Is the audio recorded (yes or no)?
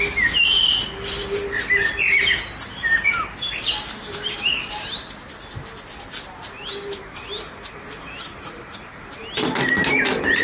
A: yes